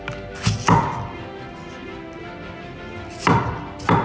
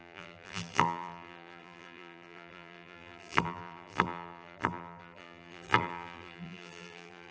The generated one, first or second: second